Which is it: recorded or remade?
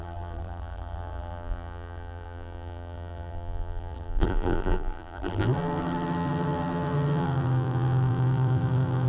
remade